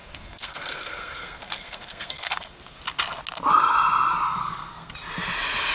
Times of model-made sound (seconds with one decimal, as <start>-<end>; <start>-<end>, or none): 0.0-2.8; 4.4-4.9